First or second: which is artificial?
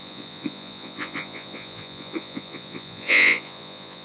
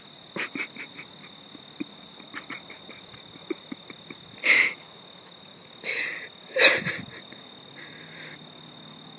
first